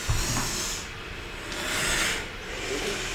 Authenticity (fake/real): real